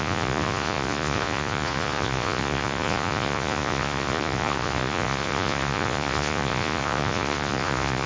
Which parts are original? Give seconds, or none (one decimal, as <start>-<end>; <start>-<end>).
none